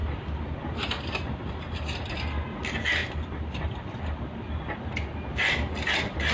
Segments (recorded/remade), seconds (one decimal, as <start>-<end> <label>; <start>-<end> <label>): 0.0-6.3 recorded